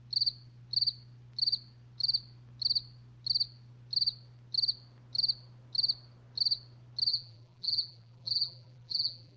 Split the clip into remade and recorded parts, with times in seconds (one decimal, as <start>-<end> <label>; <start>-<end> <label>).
0.0-7.1 recorded; 7.1-9.4 remade